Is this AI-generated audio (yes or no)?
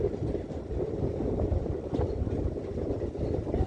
no